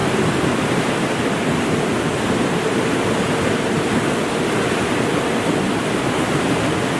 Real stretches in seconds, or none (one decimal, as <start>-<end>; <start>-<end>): 4.0-7.0